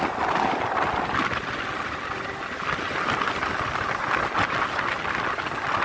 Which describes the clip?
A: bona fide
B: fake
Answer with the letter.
A